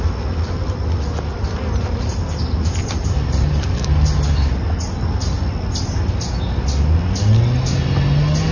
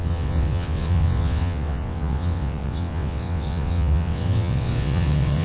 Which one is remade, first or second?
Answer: second